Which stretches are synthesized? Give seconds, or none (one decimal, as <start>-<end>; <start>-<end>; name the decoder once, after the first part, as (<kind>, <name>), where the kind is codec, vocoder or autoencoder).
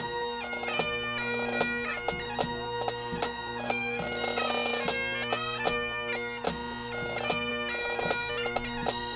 none